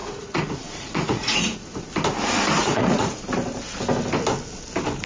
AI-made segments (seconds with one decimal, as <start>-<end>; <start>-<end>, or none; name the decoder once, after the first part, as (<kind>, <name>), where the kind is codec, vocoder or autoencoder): 0.0-1.9 (vocoder, Vocos); 2.6-3.2